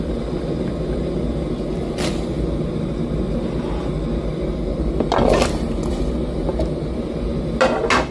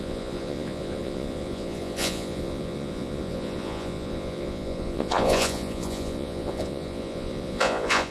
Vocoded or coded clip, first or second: second